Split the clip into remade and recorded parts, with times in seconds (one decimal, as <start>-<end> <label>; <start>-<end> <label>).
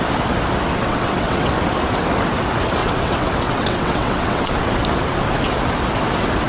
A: 0.0-0.9 recorded; 0.9-1.5 remade; 1.5-2.8 recorded; 2.8-4.5 remade; 4.5-6.5 recorded